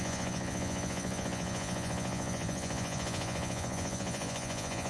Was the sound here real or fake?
fake